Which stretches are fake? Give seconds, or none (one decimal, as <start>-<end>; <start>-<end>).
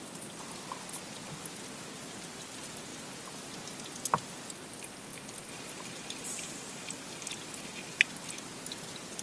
none